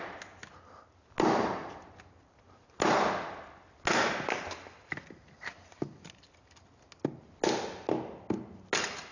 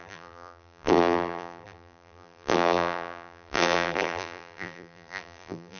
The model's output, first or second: second